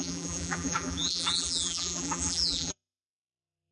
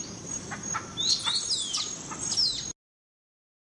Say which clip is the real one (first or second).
second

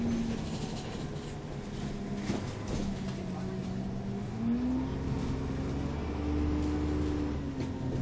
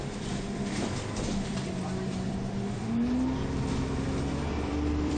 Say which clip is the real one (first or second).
first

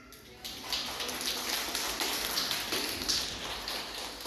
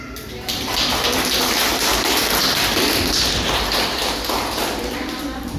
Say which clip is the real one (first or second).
first